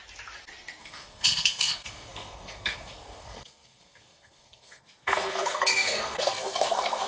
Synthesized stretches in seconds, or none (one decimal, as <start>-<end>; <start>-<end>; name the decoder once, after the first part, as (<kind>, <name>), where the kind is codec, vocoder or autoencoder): 0.8-7.1 (codec, SNAC)